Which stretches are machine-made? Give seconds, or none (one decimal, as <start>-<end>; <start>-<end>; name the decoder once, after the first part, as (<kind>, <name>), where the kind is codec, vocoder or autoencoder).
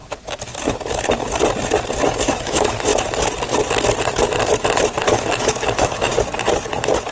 2.1-2.9 (autoencoder, DAC-VAE); 5.0-6.1